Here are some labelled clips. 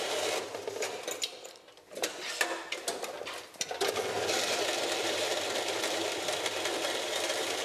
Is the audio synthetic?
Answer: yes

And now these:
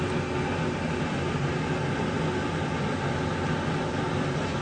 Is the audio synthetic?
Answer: no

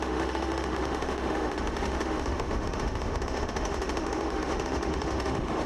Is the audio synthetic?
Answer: yes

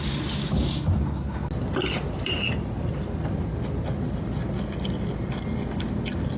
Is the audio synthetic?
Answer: no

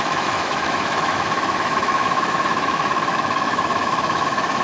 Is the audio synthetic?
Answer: yes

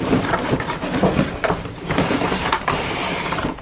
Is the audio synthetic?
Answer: yes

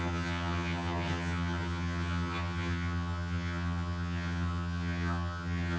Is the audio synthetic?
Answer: yes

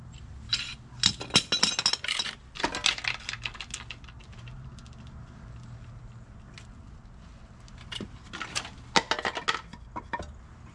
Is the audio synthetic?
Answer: no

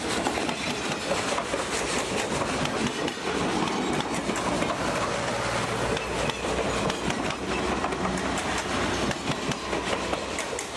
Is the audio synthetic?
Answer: no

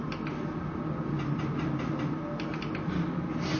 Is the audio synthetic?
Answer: no